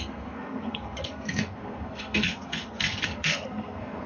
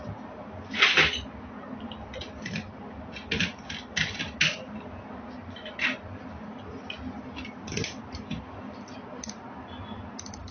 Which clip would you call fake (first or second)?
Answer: first